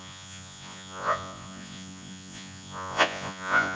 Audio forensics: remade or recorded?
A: remade